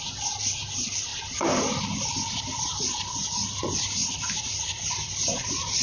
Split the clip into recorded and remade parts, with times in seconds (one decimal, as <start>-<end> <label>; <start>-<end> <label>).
0.0-5.8 remade